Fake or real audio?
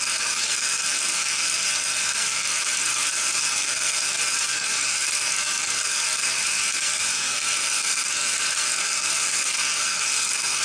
fake